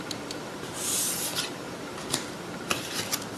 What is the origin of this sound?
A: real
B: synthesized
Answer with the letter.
B